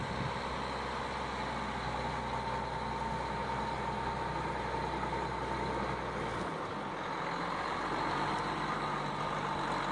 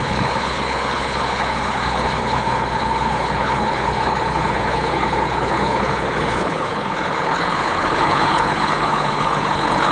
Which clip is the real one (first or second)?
first